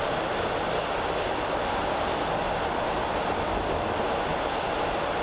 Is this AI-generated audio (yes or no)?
no